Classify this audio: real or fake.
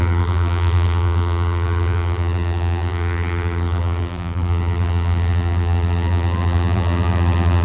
fake